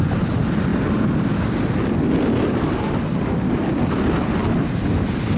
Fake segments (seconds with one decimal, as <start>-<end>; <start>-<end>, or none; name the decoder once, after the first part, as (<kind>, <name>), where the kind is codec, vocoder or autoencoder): none